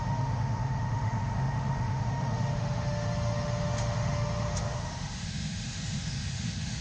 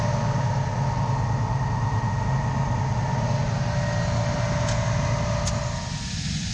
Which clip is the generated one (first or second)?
first